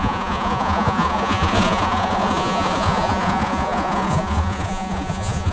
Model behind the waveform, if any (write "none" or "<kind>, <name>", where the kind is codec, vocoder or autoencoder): vocoder, Vocos